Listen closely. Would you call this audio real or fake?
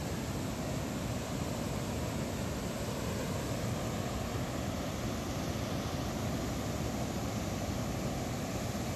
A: real